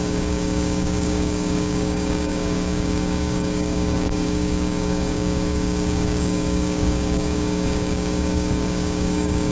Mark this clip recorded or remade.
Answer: remade